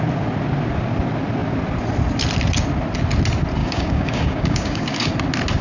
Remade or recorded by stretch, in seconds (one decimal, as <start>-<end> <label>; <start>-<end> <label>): 0.0-3.6 recorded; 3.6-5.1 remade; 5.1-5.6 recorded